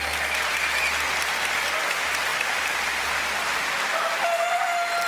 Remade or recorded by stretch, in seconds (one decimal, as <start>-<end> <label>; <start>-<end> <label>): 0.0-2.3 recorded; 2.3-2.9 remade; 2.9-5.1 recorded